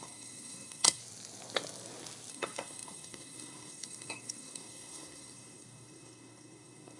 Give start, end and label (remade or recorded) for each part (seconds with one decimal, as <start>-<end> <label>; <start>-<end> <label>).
0.0-1.0 remade; 1.0-2.3 recorded; 2.3-7.0 remade